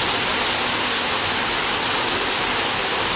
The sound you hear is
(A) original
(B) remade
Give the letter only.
A